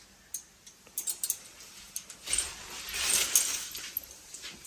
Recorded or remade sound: recorded